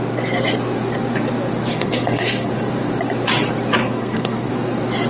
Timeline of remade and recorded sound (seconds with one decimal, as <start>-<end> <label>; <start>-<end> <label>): 0.0-1.7 recorded; 1.7-2.5 remade; 2.5-3.8 recorded; 3.8-4.5 remade; 4.5-5.1 recorded